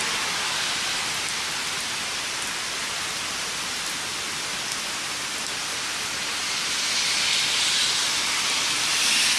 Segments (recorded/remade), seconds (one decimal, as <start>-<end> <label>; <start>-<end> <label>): 0.0-9.4 recorded